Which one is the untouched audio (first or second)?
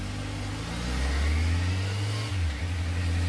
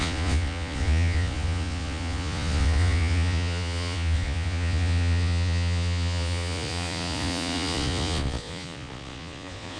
first